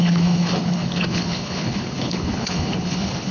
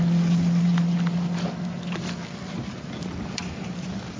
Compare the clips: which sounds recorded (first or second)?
second